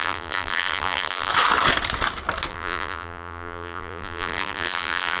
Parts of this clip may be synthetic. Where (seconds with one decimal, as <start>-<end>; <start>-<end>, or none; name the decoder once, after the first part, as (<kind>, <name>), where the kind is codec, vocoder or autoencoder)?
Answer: 0.0-1.3 (vocoder, BigVGAN v2); 2.5-5.2